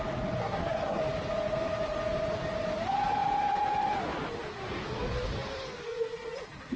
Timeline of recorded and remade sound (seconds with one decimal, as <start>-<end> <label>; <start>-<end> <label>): 0.0-0.4 recorded; 0.4-1.0 remade; 1.0-6.8 recorded